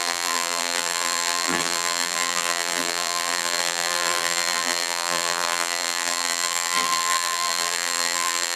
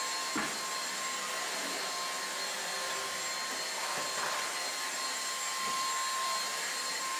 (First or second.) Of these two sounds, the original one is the second